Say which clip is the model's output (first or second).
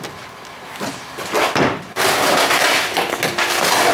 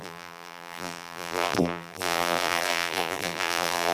second